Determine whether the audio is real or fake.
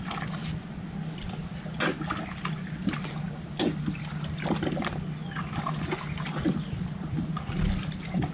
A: real